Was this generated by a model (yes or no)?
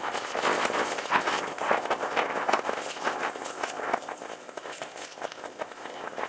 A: yes